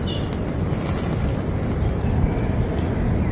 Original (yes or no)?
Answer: yes